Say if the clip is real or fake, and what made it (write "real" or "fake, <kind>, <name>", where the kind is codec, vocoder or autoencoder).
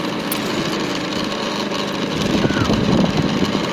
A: real